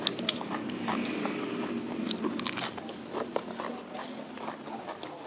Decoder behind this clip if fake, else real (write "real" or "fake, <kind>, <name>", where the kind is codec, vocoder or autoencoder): real